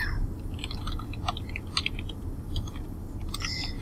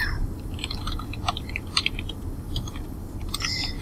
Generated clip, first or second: second